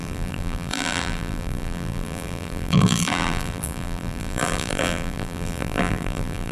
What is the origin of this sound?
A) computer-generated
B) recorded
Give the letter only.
A